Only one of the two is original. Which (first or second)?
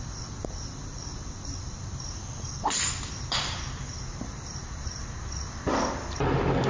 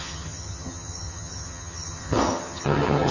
first